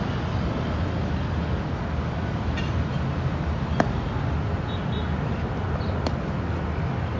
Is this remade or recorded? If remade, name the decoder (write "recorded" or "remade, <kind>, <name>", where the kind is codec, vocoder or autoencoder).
recorded